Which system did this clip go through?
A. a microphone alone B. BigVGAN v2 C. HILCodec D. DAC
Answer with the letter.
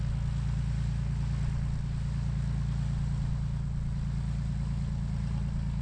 A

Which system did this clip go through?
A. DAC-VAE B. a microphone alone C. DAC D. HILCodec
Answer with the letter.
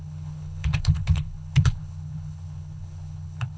D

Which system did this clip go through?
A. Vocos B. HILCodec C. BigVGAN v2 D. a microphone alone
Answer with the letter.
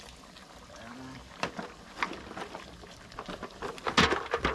D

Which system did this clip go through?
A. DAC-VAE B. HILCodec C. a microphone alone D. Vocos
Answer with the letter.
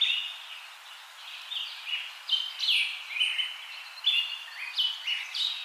C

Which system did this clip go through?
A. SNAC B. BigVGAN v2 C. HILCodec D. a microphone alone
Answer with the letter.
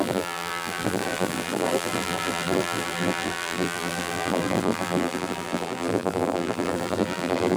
B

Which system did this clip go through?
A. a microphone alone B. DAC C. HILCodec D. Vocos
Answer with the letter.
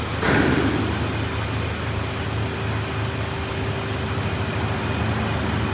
A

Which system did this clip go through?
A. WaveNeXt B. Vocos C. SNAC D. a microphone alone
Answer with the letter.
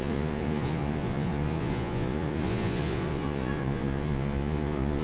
B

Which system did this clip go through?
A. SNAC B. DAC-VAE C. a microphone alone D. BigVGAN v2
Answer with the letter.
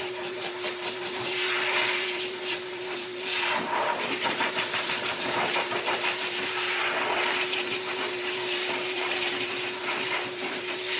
D